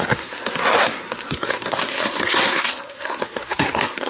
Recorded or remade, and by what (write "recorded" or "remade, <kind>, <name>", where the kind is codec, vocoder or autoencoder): remade, codec, SNAC